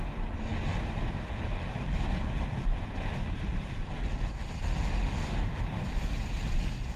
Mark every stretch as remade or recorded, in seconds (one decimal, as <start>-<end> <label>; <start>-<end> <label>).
0.0-5.0 recorded; 5.0-5.6 remade; 5.6-7.0 recorded